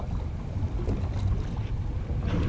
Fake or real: real